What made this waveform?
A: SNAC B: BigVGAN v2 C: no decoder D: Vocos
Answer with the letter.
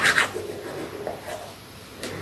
C